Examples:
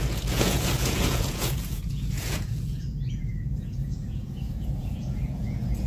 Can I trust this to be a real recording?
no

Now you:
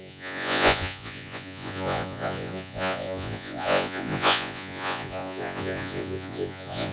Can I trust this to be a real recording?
no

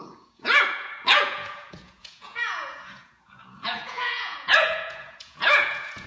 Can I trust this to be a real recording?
no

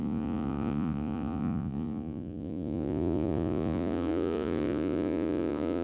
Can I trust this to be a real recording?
no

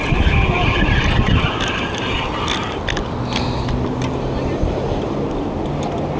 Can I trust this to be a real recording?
yes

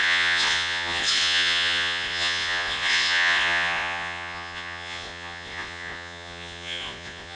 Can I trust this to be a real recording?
no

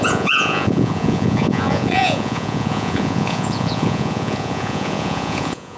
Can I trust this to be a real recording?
no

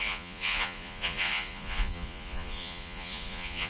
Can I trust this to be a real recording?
no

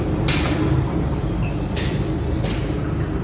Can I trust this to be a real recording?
yes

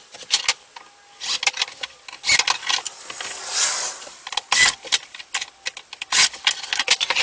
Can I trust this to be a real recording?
yes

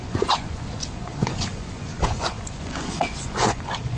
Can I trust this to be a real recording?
no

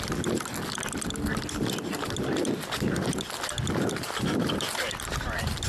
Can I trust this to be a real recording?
yes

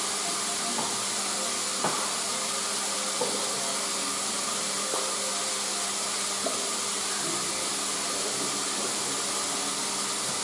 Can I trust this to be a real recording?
yes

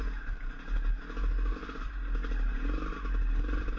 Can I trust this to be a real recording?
yes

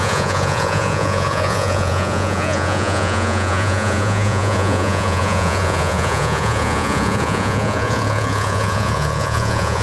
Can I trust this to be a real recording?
no